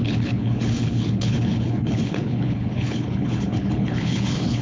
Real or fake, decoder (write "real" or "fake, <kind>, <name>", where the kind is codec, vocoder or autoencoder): fake, codec, HILCodec